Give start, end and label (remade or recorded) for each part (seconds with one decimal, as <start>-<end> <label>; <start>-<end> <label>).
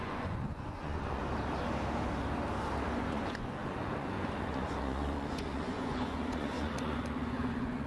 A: 0.0-1.2 remade; 1.2-3.0 recorded; 3.0-7.9 remade